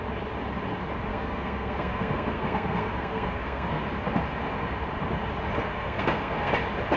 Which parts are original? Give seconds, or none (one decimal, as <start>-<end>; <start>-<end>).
0.0-1.1; 3.8-5.7; 6.5-7.0